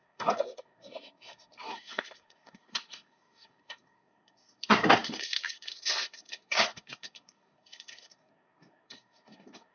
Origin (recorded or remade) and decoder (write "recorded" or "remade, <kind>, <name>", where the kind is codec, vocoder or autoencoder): remade, codec, SNAC